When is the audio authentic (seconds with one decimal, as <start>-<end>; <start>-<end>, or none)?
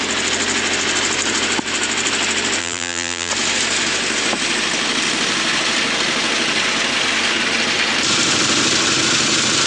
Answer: 0.0-2.6; 3.3-9.7